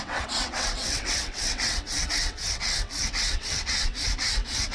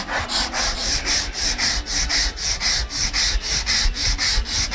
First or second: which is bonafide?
second